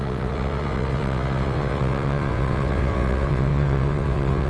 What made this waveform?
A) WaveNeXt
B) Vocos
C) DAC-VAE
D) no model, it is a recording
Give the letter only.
A